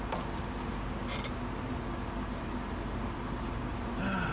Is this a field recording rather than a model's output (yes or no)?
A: yes